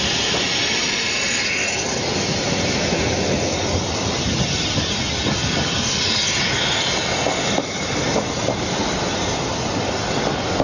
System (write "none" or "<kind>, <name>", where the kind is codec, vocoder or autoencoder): none